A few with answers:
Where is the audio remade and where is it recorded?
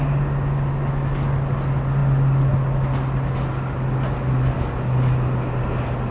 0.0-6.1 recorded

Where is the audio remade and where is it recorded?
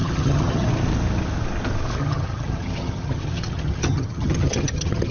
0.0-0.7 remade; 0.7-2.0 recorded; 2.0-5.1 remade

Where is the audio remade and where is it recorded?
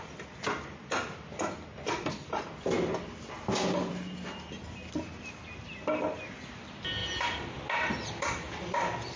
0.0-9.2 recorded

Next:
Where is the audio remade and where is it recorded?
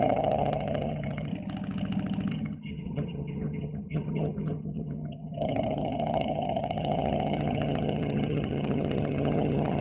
0.0-1.3 remade; 1.3-2.3 recorded; 2.3-9.8 remade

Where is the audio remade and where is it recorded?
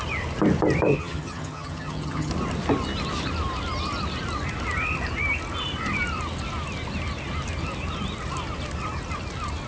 0.0-0.9 recorded; 0.9-2.3 remade; 2.3-9.7 recorded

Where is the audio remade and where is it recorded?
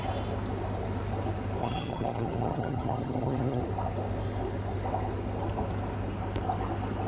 0.0-1.6 recorded; 1.6-3.6 remade; 3.6-7.1 recorded